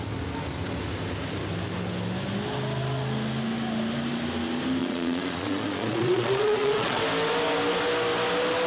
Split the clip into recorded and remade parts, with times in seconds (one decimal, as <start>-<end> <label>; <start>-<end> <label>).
0.0-4.8 recorded; 4.8-7.0 remade; 7.0-8.7 recorded